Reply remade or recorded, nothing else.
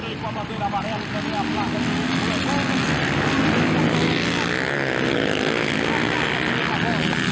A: recorded